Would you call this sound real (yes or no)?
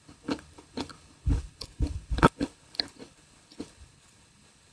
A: no